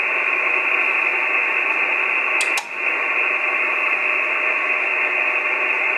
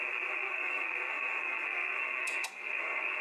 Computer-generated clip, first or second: second